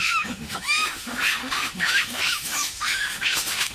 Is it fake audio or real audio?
fake